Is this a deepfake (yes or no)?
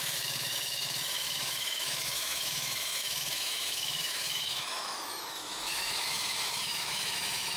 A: yes